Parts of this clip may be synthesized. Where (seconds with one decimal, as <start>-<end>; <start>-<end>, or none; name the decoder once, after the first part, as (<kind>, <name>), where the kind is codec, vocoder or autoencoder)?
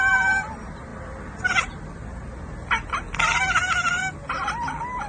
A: none